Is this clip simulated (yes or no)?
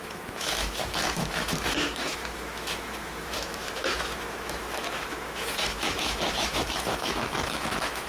yes